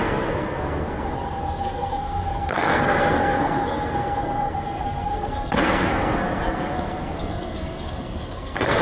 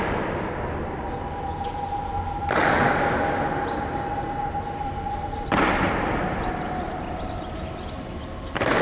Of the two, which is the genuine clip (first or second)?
second